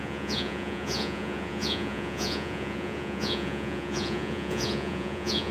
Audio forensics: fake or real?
fake